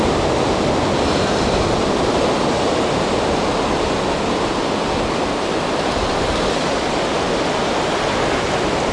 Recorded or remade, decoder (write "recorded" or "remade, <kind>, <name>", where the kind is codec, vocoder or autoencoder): recorded